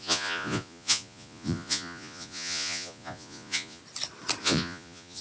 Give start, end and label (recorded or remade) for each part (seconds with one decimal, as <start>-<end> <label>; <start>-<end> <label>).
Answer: 0.0-3.8 remade; 3.8-4.4 recorded; 4.4-5.2 remade